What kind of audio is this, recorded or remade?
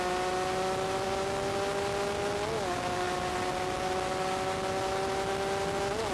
recorded